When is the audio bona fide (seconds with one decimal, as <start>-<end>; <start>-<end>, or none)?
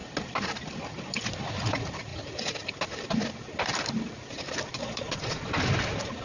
0.0-4.8; 5.5-6.2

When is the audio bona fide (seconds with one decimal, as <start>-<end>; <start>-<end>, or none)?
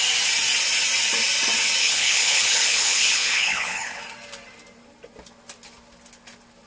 0.0-1.8; 4.0-6.7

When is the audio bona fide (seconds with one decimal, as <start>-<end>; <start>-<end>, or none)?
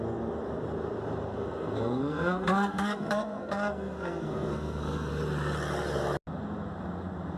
0.0-1.3; 5.1-7.4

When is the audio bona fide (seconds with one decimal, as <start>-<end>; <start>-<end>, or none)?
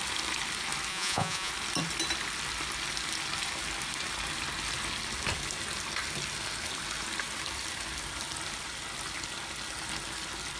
0.0-0.9; 1.5-10.6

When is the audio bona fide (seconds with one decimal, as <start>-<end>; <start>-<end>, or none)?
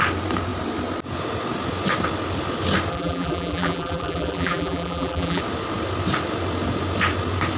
0.0-2.9; 5.4-7.6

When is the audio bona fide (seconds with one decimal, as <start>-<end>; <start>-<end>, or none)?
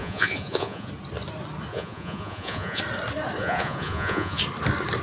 0.9-1.7; 2.8-3.4; 4.4-5.0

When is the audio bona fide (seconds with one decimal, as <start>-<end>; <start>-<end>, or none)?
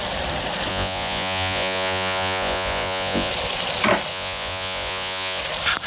0.0-0.7; 3.3-4.1; 5.4-5.9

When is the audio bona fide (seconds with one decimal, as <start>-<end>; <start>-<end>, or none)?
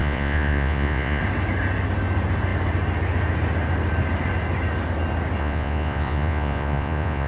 1.2-5.4